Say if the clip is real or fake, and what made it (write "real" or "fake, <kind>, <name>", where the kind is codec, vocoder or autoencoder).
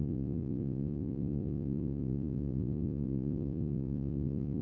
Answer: fake, vocoder, Vocos